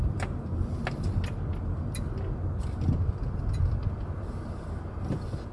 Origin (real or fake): real